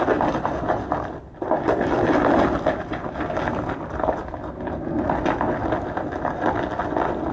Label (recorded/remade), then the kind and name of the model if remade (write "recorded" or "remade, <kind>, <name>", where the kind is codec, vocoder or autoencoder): recorded